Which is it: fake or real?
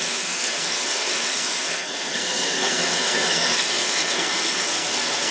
fake